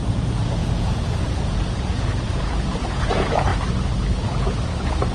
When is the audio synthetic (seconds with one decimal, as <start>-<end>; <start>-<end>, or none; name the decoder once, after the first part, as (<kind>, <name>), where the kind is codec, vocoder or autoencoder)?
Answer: 0.0-3.5 (vocoder, Vocos); 4.1-5.1